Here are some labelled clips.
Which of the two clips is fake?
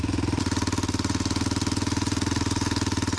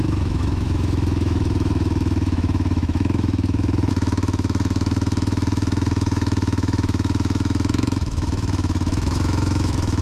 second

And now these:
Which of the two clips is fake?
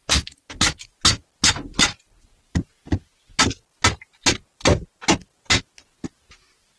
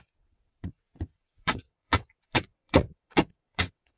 second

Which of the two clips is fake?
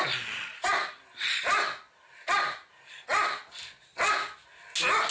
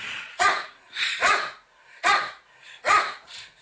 second